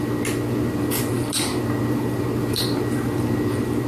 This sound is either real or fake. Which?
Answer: real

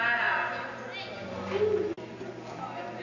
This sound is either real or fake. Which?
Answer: real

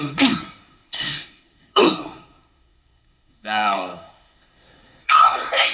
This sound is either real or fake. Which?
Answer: fake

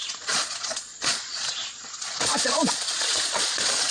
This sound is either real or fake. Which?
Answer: fake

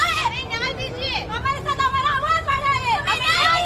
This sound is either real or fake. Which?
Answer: real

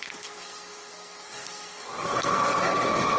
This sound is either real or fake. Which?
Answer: fake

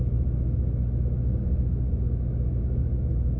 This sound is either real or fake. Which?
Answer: fake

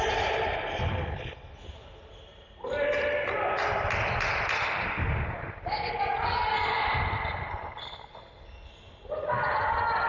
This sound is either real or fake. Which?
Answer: real